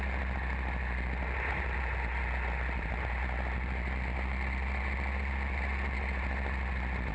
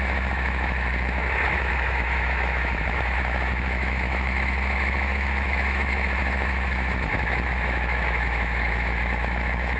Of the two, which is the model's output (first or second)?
second